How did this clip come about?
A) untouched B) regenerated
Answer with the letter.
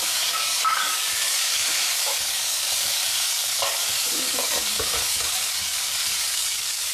B